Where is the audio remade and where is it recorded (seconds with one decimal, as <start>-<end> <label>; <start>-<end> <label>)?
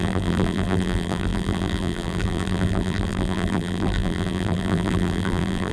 0.0-5.7 remade